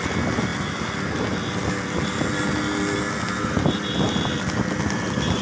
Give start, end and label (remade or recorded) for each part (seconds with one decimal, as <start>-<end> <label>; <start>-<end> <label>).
0.0-5.4 recorded